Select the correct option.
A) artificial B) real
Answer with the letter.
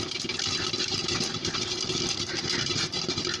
B